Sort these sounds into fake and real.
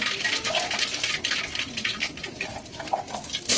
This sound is real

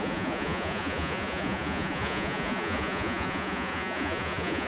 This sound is fake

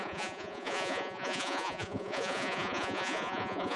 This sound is fake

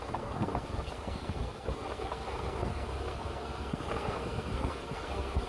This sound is fake